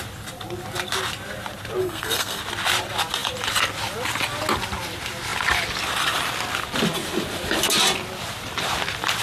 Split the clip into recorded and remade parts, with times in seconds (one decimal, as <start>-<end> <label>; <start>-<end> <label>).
0.0-1.8 recorded; 1.8-2.4 remade; 2.4-9.2 recorded